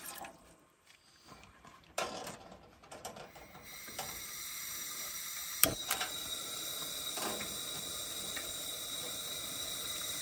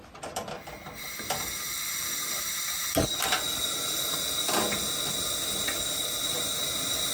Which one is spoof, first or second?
first